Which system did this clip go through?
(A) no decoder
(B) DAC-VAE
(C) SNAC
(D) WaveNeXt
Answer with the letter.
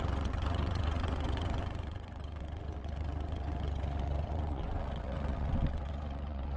D